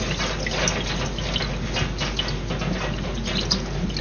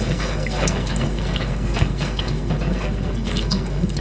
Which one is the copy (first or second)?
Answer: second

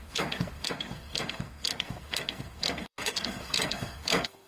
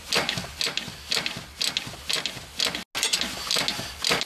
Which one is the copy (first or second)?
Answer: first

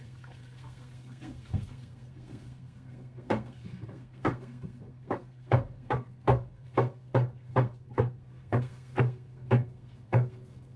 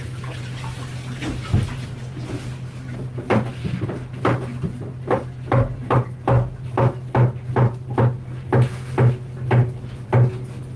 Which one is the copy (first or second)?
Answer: first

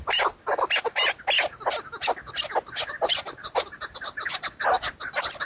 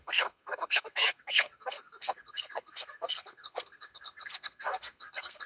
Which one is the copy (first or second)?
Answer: second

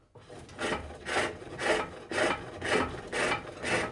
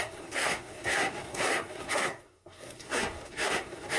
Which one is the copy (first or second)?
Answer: second